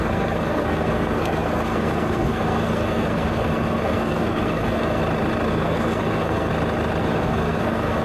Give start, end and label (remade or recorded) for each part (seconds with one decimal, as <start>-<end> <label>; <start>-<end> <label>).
0.0-5.0 remade; 5.0-5.5 recorded; 5.5-6.5 remade; 6.5-7.0 recorded; 7.0-8.0 remade